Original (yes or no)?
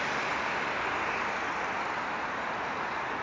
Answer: yes